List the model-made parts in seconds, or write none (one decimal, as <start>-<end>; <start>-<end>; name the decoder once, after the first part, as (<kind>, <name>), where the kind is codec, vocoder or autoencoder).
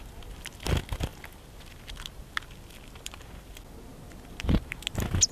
none